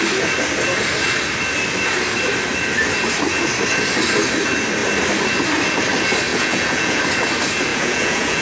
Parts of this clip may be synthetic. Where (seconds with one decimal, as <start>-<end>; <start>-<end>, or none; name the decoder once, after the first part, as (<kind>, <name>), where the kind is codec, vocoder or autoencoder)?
6.3-7.0 (vocoder, Vocos); 7.7-8.4